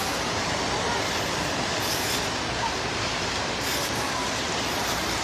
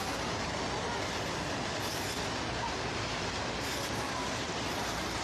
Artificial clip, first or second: first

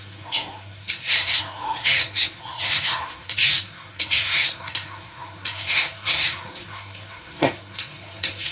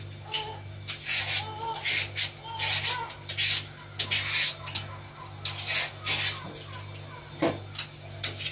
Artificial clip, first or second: first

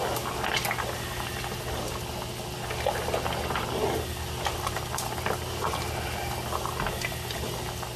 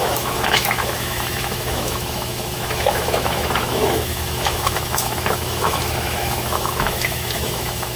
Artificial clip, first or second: second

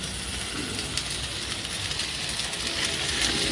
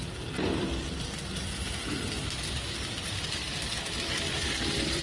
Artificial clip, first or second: second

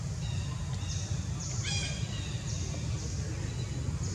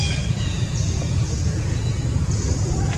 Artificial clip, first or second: second